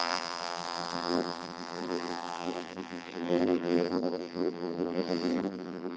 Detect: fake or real fake